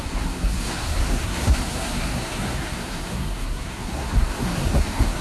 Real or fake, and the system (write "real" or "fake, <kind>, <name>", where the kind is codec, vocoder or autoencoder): fake, codec, SNAC